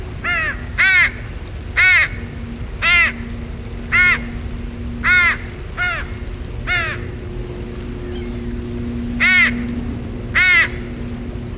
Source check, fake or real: real